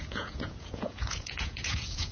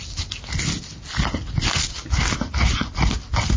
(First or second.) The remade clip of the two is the first